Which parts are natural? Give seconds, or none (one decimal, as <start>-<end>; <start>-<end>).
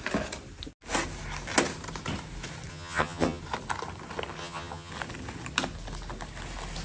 0.0-2.7; 3.4-4.4; 4.9-6.8